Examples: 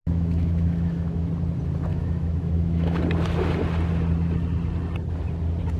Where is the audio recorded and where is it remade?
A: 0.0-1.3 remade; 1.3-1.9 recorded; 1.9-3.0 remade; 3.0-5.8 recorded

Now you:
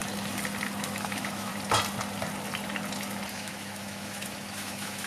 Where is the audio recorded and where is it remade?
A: 0.0-0.8 recorded; 0.8-1.5 remade; 1.5-3.3 recorded; 3.3-5.1 remade

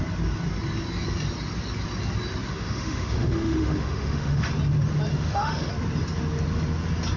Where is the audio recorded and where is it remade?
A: 0.0-2.5 recorded; 2.5-4.5 remade; 4.5-5.1 recorded; 5.1-5.7 remade; 5.7-7.2 recorded

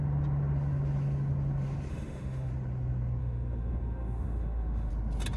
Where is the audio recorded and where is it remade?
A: 0.0-1.9 recorded; 1.9-2.5 remade; 2.5-3.2 recorded; 3.2-4.9 remade; 4.9-5.4 recorded

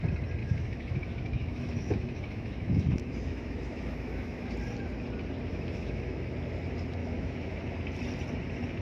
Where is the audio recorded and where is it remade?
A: 0.0-0.4 recorded; 0.4-4.5 remade; 4.5-5.5 recorded; 5.5-6.3 remade; 6.3-7.0 recorded; 7.0-7.6 remade; 7.6-8.8 recorded

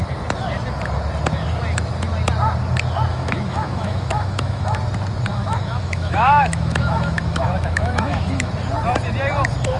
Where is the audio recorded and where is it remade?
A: 0.0-3.1 recorded; 3.1-4.8 remade; 4.8-5.3 recorded; 5.3-8.5 remade; 8.5-9.8 recorded